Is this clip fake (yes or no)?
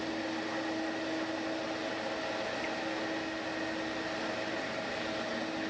no